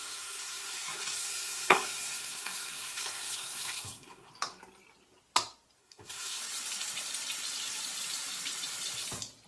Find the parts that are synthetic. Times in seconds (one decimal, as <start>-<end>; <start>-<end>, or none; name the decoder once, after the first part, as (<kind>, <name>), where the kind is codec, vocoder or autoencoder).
0.0-4.3 (codec, SNAC); 5.8-6.4